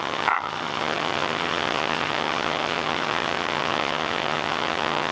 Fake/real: fake